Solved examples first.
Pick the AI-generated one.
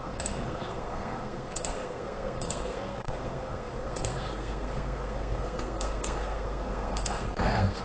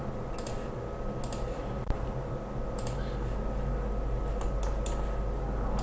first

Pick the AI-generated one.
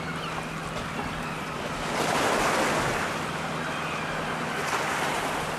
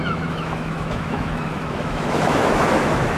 second